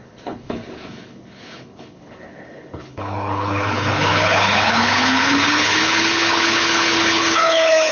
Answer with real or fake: fake